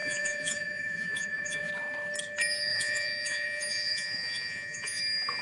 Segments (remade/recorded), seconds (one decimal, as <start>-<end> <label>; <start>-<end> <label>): 0.0-1.7 remade; 1.7-2.7 recorded; 2.7-5.0 remade; 5.0-5.4 recorded